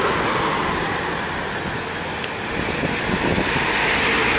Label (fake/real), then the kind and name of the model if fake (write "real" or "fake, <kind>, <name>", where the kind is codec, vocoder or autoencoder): real